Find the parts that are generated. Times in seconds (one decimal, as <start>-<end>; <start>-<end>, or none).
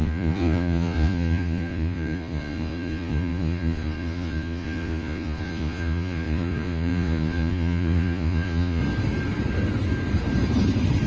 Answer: 0.0-8.8